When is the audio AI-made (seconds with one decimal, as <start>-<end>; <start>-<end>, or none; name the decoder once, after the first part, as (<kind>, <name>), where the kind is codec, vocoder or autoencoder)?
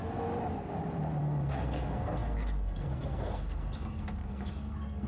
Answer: 1.2-5.1 (codec, SNAC)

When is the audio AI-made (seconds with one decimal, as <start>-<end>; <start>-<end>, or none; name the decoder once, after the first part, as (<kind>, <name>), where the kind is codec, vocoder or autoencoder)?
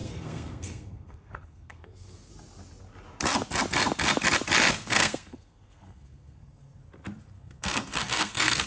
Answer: 0.0-2.3 (codec, SNAC); 4.7-6.8; 7.3-8.7